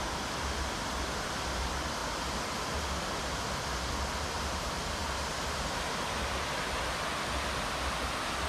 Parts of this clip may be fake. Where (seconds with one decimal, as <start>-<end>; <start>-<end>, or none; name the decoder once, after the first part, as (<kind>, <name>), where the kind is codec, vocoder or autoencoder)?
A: none